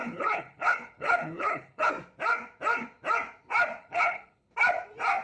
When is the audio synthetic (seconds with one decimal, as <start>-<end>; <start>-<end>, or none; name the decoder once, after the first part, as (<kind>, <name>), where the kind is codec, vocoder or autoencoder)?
0.0-1.9 (codec, HILCodec); 3.8-4.5